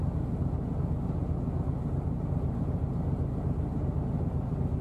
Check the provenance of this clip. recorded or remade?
recorded